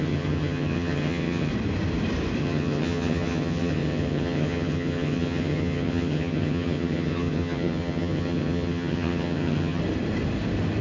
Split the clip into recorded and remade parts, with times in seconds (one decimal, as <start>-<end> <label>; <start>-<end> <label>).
0.0-1.5 remade; 1.5-2.4 recorded; 2.4-9.8 remade; 9.8-10.8 recorded